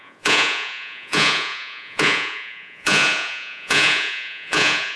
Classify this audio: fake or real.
fake